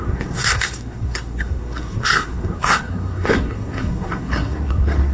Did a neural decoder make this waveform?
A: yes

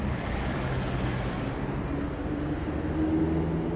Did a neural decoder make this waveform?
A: no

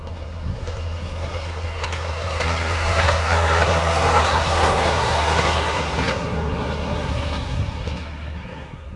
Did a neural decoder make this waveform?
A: yes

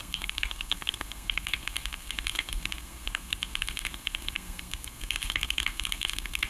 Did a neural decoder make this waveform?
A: yes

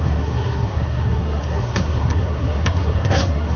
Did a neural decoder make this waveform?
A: yes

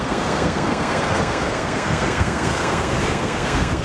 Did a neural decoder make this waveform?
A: yes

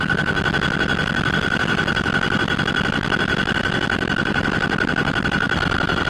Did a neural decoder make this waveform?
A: no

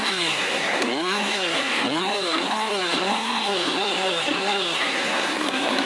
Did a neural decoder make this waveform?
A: yes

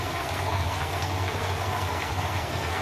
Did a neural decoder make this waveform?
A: yes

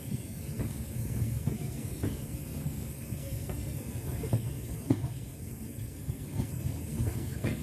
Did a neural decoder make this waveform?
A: yes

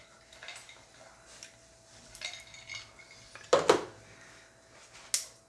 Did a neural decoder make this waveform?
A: no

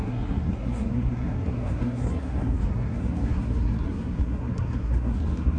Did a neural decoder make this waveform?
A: yes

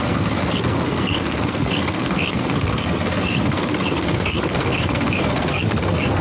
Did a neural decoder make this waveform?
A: yes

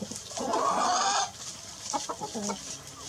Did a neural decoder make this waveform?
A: no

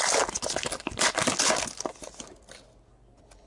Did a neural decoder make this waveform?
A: no